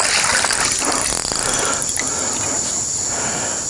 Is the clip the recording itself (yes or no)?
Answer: yes